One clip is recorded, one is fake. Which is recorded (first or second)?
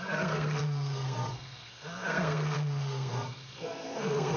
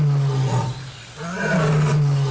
second